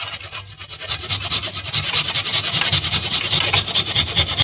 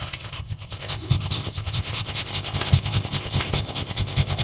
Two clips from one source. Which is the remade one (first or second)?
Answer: second